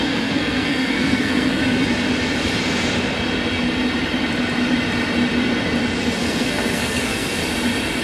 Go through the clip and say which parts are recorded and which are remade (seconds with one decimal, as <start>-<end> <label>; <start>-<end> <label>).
0.0-1.6 remade; 1.6-6.2 recorded; 6.2-7.4 remade; 7.4-8.0 recorded